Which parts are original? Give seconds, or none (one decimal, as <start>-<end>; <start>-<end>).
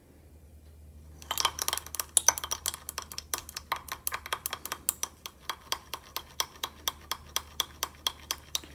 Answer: 0.0-8.7